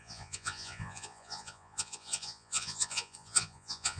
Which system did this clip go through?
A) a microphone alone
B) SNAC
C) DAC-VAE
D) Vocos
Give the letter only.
D